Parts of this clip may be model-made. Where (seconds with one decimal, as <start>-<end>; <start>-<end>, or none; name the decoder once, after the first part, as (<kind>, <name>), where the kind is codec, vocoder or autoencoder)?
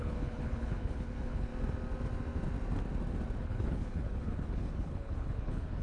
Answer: 0.0-1.5 (codec, HILCodec); 3.4-5.8